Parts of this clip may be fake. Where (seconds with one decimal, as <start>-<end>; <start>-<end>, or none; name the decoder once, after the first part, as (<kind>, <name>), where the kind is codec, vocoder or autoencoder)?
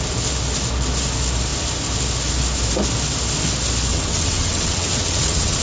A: 3.9-5.6 (vocoder, WaveNeXt)